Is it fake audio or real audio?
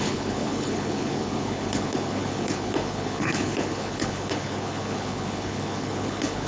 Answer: fake